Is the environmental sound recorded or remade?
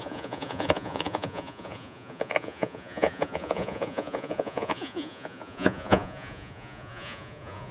remade